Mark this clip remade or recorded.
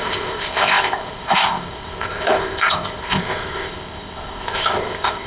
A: remade